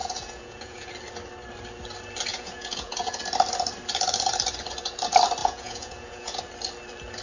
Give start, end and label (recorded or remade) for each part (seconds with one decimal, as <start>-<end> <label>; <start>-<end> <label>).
0.0-0.9 remade; 0.9-2.3 recorded; 2.3-3.2 remade; 3.2-5.4 recorded; 5.4-6.4 remade; 6.4-7.2 recorded